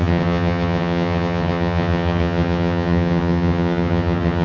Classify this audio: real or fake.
fake